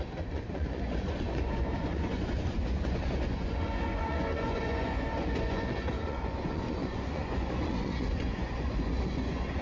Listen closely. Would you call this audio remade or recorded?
remade